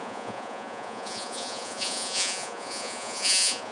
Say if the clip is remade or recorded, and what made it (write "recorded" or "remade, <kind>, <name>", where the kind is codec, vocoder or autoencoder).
remade, vocoder, Vocos